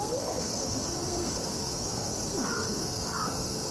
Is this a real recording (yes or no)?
no